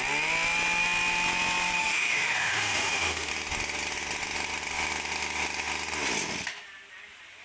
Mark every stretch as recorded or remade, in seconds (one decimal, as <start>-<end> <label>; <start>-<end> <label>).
0.0-1.8 recorded; 1.8-3.3 remade; 3.3-7.4 recorded